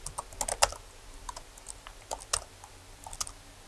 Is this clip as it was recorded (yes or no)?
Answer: yes